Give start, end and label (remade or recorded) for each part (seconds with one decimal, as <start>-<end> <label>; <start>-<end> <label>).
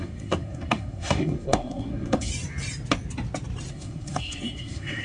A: 0.0-2.3 remade; 2.3-3.7 recorded; 3.7-5.0 remade